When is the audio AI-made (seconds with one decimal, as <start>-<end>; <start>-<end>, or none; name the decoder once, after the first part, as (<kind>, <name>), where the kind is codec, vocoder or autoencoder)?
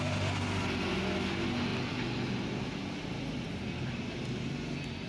none